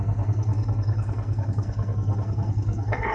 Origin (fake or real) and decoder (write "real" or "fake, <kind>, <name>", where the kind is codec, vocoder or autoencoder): fake, codec, SNAC